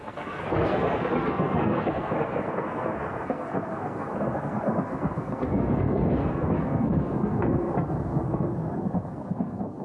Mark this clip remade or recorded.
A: remade